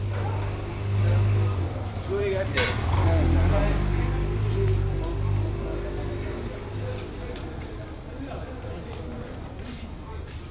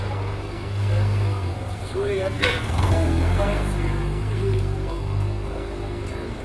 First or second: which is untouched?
first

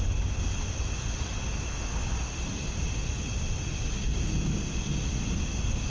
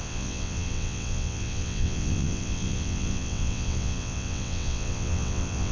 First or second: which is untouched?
first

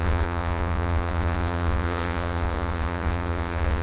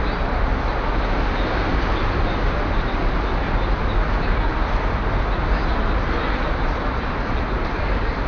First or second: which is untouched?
second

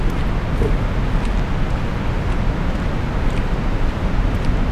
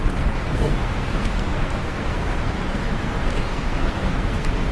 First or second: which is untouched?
first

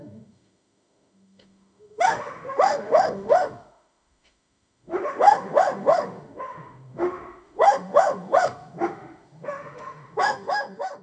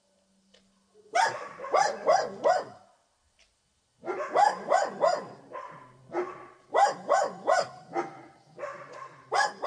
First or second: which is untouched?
second